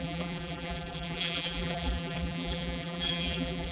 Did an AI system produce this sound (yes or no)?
yes